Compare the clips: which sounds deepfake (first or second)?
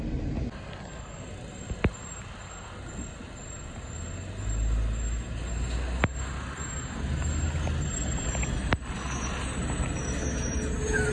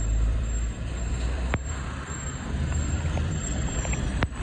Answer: second